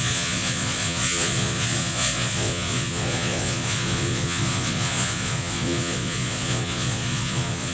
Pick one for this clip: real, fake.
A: fake